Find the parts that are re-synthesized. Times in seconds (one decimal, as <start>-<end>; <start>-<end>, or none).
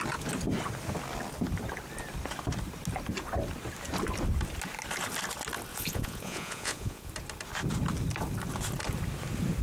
5.7-7.1